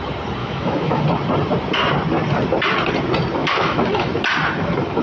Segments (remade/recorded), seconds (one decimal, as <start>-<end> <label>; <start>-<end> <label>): 0.0-0.4 recorded; 0.4-1.0 remade; 1.0-3.4 recorded; 3.4-4.1 remade; 4.1-5.0 recorded